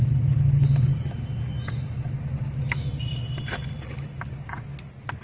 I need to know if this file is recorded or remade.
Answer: recorded